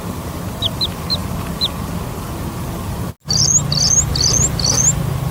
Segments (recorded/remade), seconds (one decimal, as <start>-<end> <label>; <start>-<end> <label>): 0.0-5.3 recorded